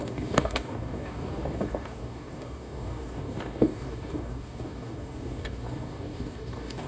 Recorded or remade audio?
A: remade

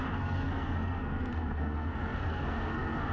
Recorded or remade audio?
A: remade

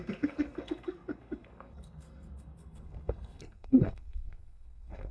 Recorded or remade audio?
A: remade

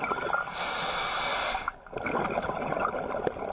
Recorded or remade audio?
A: recorded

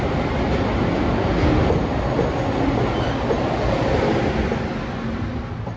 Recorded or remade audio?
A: recorded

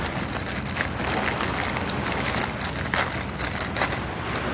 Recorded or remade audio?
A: recorded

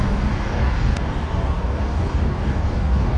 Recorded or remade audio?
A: remade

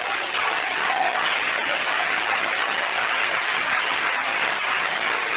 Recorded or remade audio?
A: remade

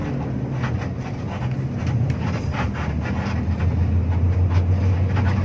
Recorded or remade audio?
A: recorded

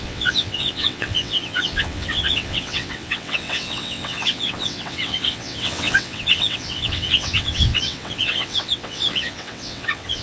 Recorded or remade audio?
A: remade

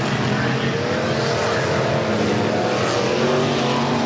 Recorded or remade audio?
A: recorded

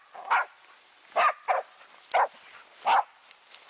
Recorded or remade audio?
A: recorded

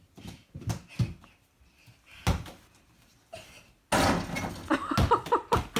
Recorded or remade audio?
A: recorded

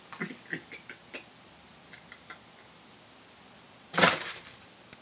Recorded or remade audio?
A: recorded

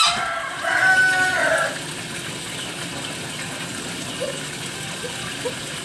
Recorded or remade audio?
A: recorded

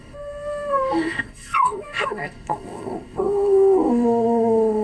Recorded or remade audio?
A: remade